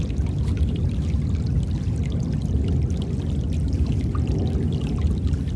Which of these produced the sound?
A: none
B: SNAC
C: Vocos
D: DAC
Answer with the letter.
A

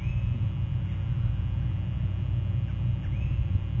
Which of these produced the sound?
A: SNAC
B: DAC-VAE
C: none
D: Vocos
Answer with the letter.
C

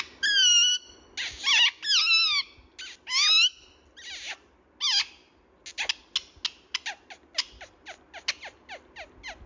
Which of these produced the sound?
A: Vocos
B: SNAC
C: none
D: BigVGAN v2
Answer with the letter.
C